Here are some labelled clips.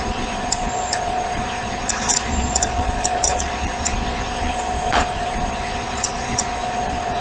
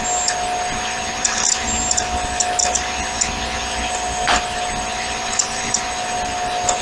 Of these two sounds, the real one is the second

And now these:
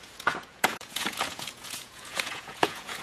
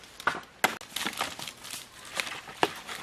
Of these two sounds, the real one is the second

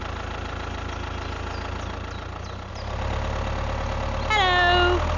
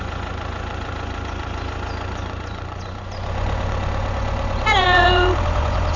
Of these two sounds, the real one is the first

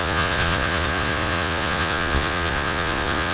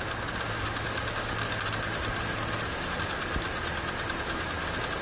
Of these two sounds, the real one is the second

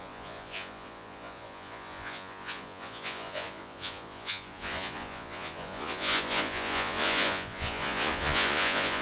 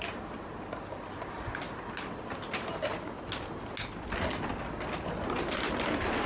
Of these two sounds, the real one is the second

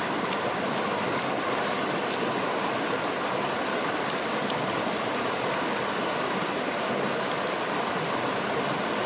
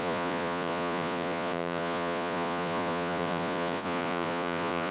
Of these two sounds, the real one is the first